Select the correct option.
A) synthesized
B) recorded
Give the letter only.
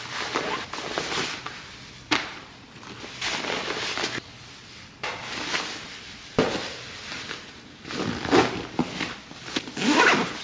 B